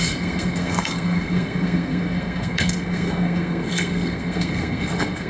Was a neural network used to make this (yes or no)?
yes